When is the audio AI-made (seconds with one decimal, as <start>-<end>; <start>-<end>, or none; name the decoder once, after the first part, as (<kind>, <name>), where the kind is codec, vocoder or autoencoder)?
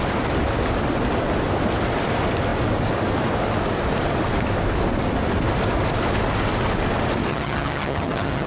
7.3-8.5 (vocoder, HiFi-GAN)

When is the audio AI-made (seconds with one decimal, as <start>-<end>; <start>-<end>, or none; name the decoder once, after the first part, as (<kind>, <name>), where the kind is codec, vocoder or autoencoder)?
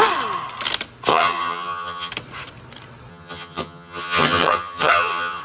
1.1-2.1 (vocoder, HiFi-GAN); 3.1-5.4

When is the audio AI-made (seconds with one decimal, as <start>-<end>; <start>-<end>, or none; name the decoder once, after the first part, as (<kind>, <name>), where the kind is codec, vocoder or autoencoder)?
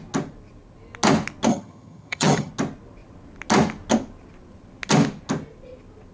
1.5-2.5 (vocoder, HiFi-GAN)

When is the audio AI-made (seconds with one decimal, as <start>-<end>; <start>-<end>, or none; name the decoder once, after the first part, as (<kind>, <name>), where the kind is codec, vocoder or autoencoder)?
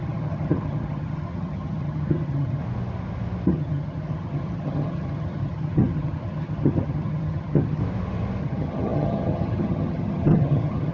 0.0-2.6 (vocoder, HiFi-GAN); 3.5-7.8; 8.4-10.9